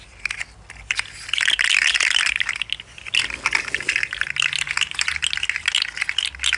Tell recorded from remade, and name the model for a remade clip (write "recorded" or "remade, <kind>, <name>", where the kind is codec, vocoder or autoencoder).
recorded